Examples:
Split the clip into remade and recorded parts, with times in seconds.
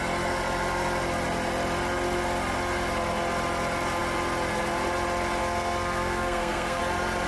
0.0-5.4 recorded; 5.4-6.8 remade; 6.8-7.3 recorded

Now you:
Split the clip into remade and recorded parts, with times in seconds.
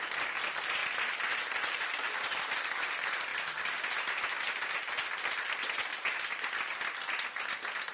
0.0-7.9 recorded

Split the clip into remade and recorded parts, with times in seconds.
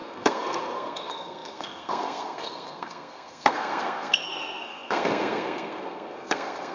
0.0-6.7 remade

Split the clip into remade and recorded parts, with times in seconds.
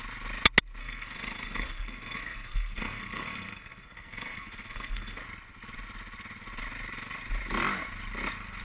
0.0-0.8 recorded; 0.8-5.2 remade; 5.2-8.6 recorded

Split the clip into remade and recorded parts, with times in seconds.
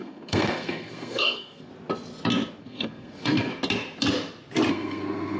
0.0-1.7 remade; 1.7-2.6 recorded; 2.6-3.5 remade; 3.5-4.7 recorded; 4.7-5.4 remade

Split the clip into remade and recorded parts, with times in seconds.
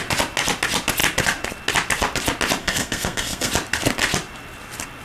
0.0-2.6 recorded; 2.6-3.5 remade; 3.5-5.0 recorded